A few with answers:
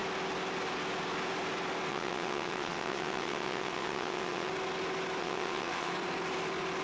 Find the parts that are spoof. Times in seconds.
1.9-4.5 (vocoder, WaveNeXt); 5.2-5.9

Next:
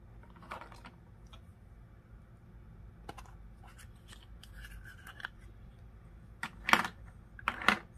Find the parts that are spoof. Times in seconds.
none

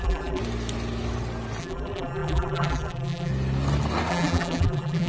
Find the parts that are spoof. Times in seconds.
0.0-0.4 (vocoder, BigVGAN v2); 1.6-3.3; 4.1-5.1

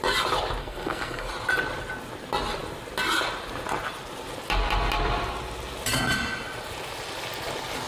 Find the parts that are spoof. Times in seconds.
0.6-1.3 (codec, SNAC)